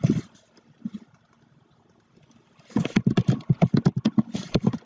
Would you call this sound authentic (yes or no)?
yes